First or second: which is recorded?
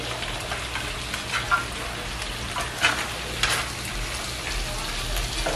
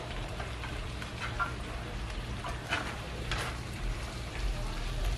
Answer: first